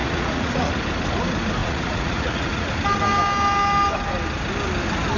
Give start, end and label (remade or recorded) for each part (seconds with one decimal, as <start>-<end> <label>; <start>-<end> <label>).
0.0-0.7 remade; 0.7-1.6 recorded; 1.6-2.7 remade; 2.7-5.2 recorded